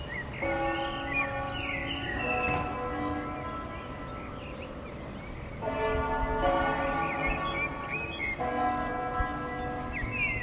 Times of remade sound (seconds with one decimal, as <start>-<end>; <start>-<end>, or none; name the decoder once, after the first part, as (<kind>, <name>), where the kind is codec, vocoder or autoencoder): none